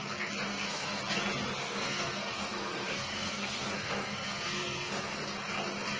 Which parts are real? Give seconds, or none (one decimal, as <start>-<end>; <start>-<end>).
0.0-0.5; 1.0-1.6; 5.2-6.0